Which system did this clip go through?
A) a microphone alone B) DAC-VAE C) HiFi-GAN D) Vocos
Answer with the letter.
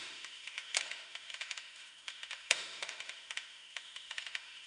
B